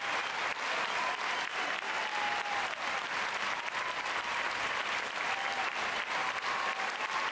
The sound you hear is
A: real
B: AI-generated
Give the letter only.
A